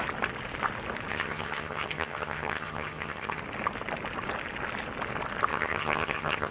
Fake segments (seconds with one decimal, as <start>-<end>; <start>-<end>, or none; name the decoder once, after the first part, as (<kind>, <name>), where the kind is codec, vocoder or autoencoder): 1.1-3.4 (vocoder, HiFi-GAN); 5.5-6.5